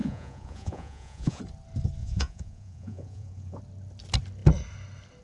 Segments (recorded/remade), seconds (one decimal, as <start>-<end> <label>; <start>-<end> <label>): 0.0-1.4 remade; 1.4-2.0 recorded; 2.0-3.6 remade; 3.6-5.2 recorded